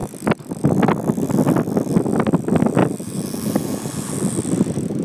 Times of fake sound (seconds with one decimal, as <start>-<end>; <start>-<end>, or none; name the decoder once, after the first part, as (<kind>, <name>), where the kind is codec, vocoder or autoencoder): 2.8-4.4 (vocoder, BigVGAN v2)